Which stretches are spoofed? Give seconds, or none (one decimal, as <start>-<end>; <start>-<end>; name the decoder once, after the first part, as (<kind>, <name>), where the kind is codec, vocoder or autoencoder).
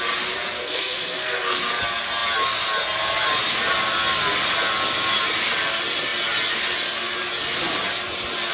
0.6-1.6 (codec, SNAC)